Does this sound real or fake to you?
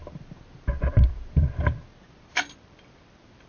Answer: real